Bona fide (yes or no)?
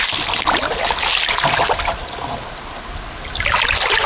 yes